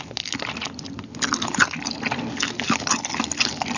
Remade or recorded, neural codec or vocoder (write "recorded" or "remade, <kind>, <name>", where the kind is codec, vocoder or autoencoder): recorded